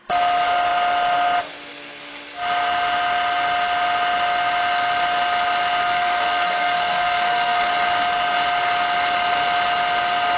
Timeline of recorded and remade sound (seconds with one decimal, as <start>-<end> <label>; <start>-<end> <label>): 0.0-5.8 recorded; 5.8-7.6 remade; 7.6-10.4 recorded